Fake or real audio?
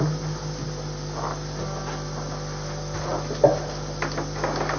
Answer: real